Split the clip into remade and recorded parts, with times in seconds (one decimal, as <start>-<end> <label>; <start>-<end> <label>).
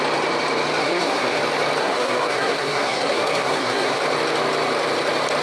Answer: 0.0-0.8 recorded; 0.8-1.4 remade; 1.4-1.8 recorded; 1.8-4.0 remade; 4.0-5.4 recorded